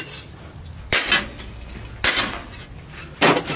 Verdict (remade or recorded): recorded